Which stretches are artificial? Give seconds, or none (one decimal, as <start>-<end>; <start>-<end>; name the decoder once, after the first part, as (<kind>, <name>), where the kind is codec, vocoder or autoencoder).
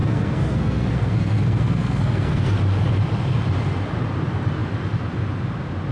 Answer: 0.0-2.6 (codec, SNAC)